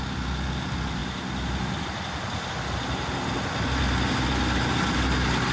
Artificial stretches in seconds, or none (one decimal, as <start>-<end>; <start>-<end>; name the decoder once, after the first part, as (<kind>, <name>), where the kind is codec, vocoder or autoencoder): none